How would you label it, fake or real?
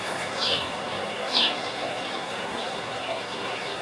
fake